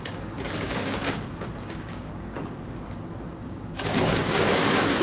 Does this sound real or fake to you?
fake